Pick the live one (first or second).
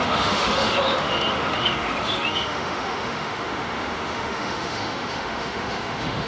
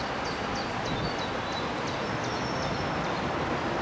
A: second